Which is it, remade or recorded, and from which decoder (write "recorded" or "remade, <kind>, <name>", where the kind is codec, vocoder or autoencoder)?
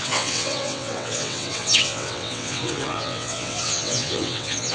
remade, vocoder, WaveNeXt